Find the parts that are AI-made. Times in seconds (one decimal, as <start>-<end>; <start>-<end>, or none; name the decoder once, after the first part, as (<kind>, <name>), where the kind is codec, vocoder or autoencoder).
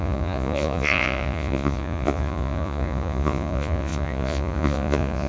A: 0.0-5.3 (vocoder, Vocos)